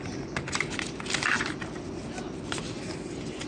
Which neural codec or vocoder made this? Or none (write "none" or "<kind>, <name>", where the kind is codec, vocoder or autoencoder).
vocoder, BigVGAN v2